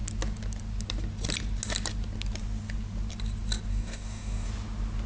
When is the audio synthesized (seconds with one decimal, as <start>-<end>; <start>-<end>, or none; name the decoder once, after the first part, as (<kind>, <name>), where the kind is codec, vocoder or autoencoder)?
3.7-4.5 (codec, DAC)